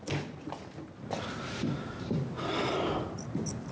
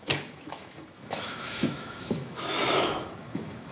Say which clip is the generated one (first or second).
second